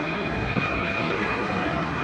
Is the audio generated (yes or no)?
yes